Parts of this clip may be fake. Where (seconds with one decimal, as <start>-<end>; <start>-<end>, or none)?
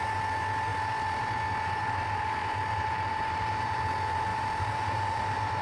2.4-3.8; 4.3-5.6